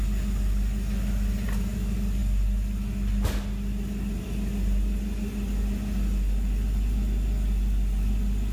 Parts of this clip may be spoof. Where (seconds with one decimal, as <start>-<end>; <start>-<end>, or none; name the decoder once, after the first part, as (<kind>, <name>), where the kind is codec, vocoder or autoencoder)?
none